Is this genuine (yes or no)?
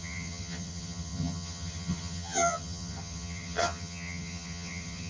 no